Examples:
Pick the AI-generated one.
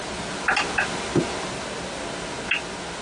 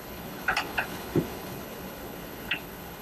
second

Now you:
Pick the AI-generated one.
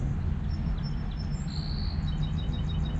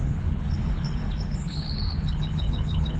second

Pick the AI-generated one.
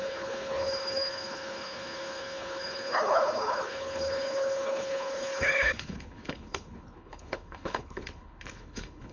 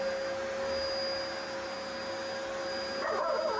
first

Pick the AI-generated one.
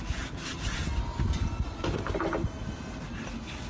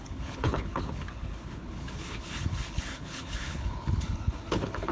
second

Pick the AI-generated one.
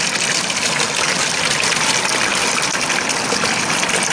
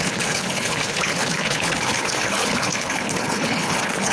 second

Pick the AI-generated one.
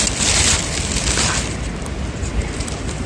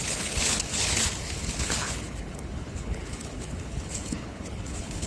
second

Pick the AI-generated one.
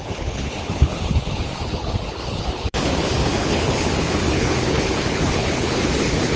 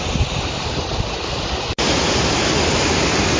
first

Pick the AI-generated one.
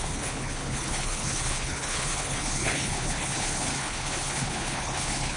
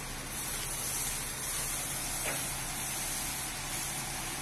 first